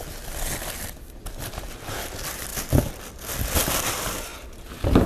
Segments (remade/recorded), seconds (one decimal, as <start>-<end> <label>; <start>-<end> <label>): 0.0-5.1 recorded